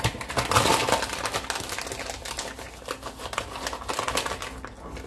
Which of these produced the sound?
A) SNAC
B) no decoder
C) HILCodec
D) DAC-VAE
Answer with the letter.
B